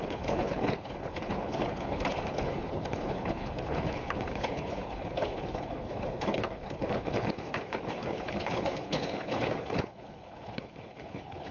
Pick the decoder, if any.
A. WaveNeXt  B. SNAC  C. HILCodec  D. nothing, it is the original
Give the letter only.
C